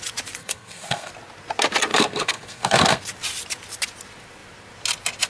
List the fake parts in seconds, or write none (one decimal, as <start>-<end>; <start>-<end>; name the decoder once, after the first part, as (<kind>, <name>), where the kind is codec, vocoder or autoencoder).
0.4-1.1 (codec, SNAC); 1.9-3.0